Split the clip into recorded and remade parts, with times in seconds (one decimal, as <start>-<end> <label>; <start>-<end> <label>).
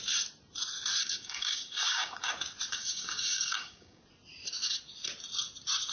0.0-1.0 recorded; 1.0-2.3 remade; 2.3-2.7 recorded; 2.7-4.0 remade; 4.0-5.9 recorded